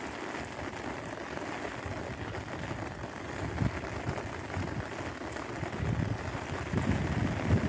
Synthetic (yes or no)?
no